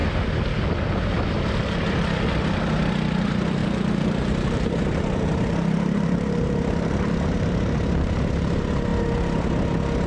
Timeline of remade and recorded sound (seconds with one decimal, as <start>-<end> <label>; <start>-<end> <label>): 0.0-3.6 recorded; 3.6-8.1 remade; 8.1-10.1 recorded